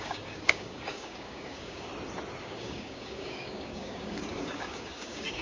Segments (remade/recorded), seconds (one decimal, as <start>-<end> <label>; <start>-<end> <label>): 0.0-1.9 remade; 1.9-2.4 recorded; 2.4-5.4 remade